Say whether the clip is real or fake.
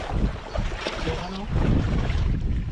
real